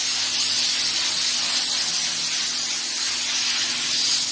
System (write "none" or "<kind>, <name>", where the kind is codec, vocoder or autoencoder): none